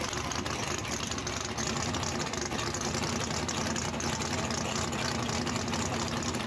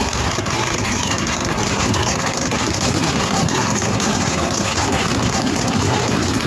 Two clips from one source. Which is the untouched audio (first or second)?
first